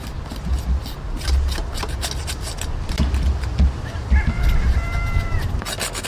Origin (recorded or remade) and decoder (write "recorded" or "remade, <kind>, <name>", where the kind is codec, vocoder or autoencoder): recorded